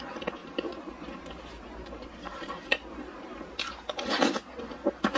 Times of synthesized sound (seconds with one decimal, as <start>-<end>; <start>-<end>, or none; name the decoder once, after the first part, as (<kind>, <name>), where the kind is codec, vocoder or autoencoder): 0.4-3.5 (vocoder, BigVGAN v2)